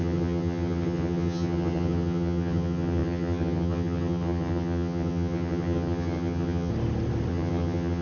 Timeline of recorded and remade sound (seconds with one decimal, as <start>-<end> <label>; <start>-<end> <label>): 0.0-6.7 remade; 6.7-7.3 recorded; 7.3-8.0 remade